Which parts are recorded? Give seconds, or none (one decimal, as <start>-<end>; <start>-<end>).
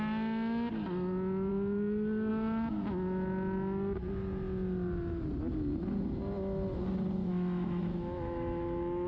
0.0-7.2